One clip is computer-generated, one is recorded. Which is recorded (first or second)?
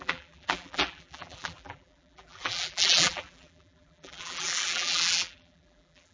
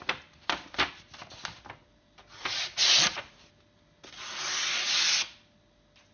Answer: second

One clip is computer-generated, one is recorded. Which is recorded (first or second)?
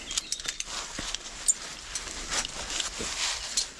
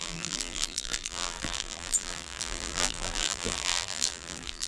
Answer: first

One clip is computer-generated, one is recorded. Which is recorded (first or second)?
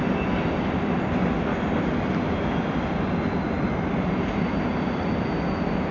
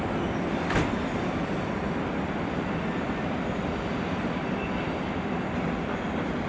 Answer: first